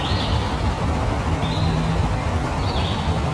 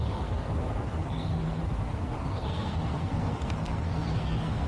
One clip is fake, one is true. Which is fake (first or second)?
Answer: second